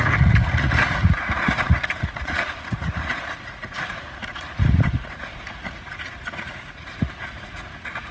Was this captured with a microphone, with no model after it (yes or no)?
no